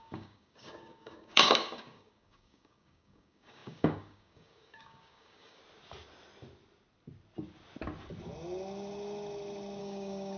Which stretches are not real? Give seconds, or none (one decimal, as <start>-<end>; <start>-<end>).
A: 0.0-5.6; 9.8-10.4